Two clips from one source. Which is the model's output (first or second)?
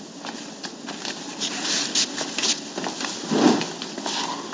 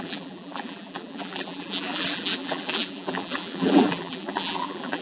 second